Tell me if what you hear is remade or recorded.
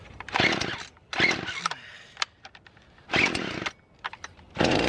recorded